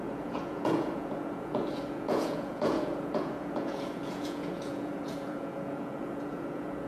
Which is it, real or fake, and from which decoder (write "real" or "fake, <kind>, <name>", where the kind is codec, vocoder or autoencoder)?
fake, vocoder, Vocos